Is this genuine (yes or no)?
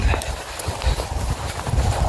yes